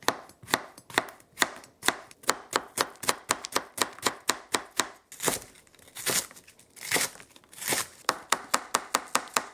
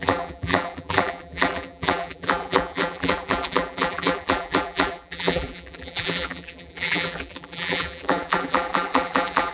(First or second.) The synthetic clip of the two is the second